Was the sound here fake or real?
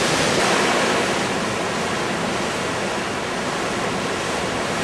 real